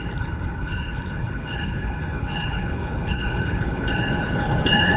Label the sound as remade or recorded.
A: remade